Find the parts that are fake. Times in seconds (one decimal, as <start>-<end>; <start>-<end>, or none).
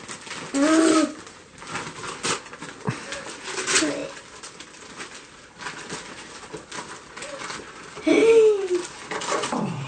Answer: none